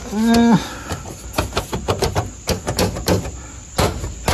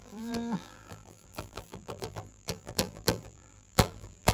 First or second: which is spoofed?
second